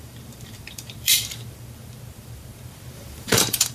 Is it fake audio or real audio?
fake